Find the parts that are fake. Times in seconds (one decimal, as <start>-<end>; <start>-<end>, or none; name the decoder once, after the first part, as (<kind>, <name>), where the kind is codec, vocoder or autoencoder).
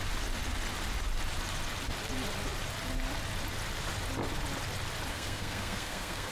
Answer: 5.1-6.3 (codec, SNAC)